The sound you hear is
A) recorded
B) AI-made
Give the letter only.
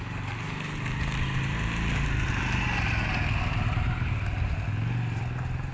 A